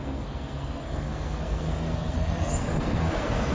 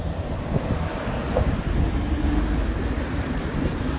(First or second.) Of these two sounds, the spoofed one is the first